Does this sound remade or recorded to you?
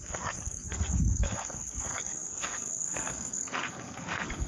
remade